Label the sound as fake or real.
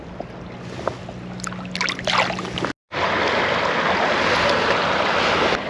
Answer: real